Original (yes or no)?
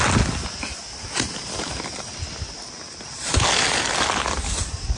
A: yes